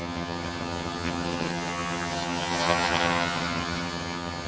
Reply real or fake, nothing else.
fake